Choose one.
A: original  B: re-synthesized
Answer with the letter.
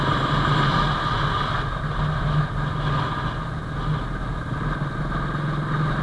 A